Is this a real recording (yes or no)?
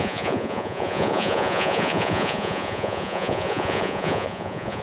no